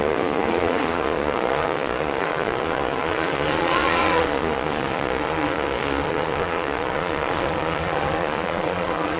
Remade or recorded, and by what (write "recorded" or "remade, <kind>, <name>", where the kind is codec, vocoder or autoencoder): remade, vocoder, Vocos